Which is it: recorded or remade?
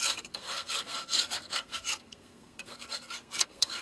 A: remade